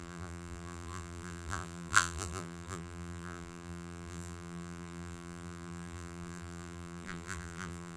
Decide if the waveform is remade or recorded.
remade